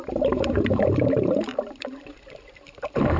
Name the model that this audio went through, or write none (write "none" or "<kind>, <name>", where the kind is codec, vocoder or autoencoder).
vocoder, BigVGAN v2